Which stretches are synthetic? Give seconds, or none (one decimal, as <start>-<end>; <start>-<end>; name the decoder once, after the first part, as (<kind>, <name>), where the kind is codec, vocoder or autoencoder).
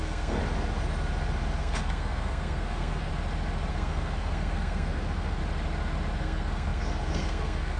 0.0-0.4 (codec, SNAC); 1.6-3.1; 3.7-5.4; 6.2-7.8